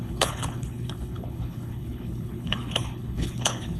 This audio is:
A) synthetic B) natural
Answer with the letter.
A